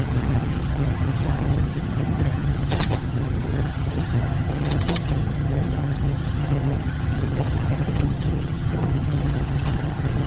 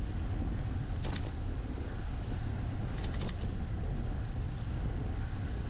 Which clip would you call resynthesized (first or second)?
first